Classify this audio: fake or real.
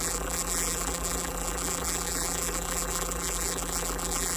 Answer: fake